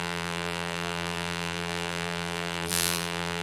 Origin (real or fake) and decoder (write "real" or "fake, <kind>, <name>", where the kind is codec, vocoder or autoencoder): fake, vocoder, BigVGAN v2